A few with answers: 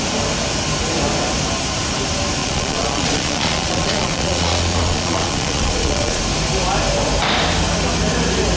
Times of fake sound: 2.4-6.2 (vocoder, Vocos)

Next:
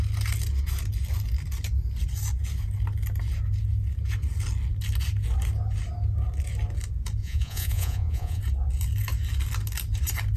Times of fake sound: 7.2-8.4 (vocoder, Vocos)

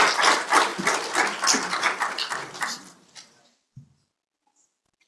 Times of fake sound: none